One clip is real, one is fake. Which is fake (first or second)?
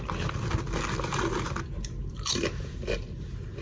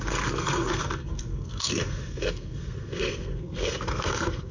second